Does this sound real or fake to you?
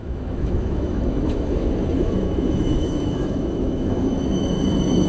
fake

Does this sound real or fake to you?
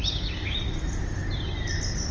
real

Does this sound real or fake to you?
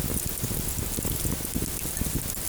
real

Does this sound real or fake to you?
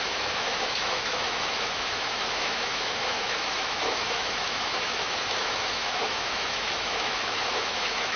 fake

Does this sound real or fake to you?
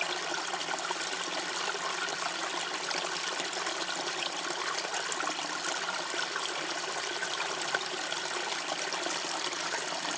real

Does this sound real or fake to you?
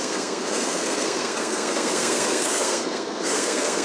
fake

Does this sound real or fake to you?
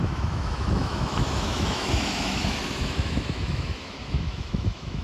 fake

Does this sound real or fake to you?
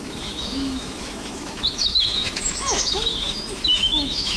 fake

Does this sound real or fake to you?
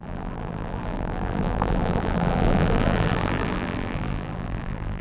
fake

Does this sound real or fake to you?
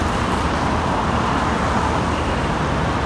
real